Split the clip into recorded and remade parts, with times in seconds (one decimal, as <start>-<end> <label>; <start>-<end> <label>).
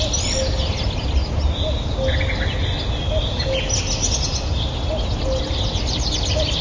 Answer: 0.0-6.6 recorded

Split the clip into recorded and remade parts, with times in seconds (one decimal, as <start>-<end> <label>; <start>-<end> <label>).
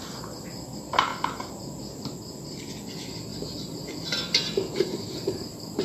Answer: 0.0-3.3 recorded; 3.3-5.8 remade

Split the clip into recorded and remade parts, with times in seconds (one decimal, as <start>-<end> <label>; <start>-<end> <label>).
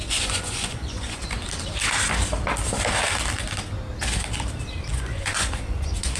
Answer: 0.0-1.2 remade; 1.2-4.9 recorded; 4.9-6.2 remade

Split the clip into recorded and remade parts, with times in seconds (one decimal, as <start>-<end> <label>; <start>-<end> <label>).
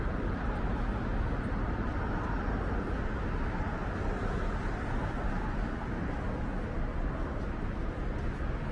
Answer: 0.0-8.7 recorded